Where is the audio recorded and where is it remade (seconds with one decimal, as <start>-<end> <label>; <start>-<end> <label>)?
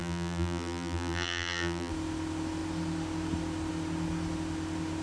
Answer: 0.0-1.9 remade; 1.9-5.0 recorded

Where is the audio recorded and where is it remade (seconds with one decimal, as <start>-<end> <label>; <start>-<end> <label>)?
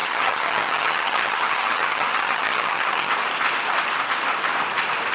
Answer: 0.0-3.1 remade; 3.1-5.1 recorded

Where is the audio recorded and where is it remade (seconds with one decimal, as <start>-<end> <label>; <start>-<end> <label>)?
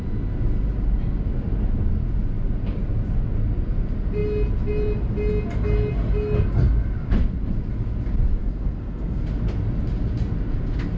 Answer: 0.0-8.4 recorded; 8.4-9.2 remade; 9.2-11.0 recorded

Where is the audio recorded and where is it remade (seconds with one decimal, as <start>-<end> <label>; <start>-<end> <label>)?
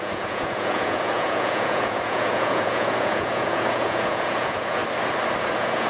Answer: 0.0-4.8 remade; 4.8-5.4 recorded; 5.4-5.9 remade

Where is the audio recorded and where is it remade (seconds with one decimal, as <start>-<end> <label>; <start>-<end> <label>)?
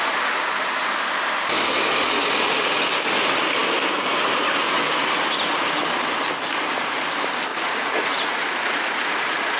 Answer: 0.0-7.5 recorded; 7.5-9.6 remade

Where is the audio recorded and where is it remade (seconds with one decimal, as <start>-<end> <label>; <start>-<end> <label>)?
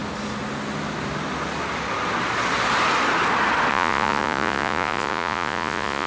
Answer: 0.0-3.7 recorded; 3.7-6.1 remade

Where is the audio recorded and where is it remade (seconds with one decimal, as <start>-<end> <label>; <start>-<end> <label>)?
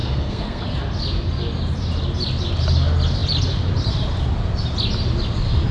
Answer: 0.0-0.6 remade; 0.6-5.7 recorded